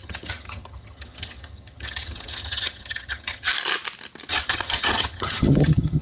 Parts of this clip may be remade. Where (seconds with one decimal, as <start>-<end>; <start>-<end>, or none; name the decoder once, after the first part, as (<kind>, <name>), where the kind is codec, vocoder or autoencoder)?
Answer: 0.0-3.5 (vocoder, HiFi-GAN); 4.3-6.0